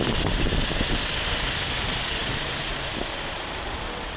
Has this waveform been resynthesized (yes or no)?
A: no